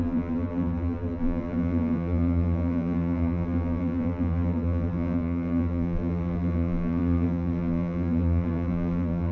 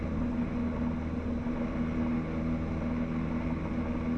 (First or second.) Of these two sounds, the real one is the second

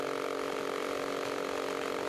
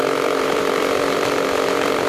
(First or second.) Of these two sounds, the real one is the first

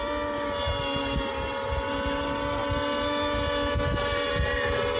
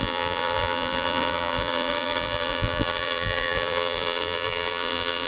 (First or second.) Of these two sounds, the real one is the first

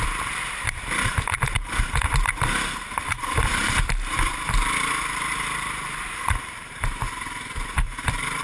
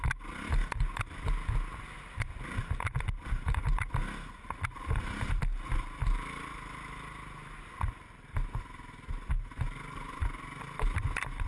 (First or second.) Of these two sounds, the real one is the second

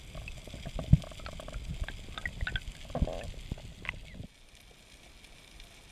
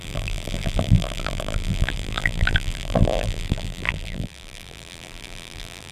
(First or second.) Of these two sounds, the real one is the first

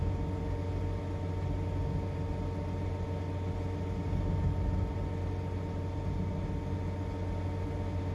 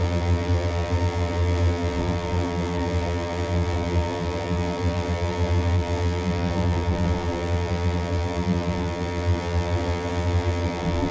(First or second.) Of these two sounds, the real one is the first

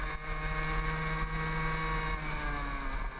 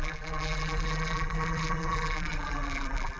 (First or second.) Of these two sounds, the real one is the first